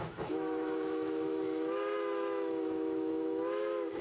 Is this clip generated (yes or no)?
yes